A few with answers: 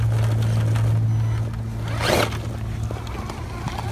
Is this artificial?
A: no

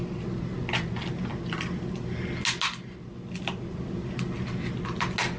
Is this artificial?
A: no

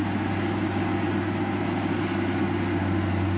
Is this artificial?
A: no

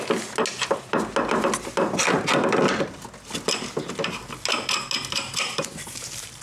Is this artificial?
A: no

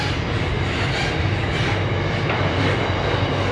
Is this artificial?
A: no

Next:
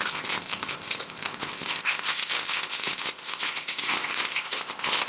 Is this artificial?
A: yes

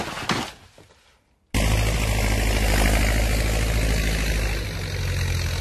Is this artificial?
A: no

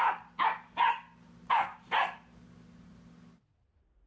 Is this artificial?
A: no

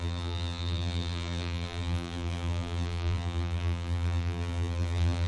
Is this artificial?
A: yes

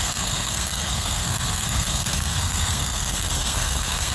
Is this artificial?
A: yes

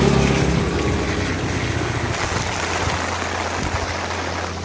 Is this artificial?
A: no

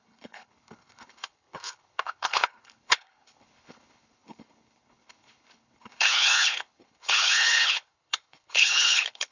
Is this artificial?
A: yes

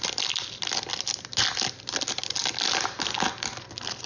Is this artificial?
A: no